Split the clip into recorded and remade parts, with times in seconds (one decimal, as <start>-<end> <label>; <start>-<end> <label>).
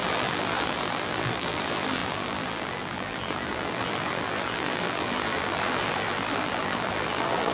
0.0-7.5 remade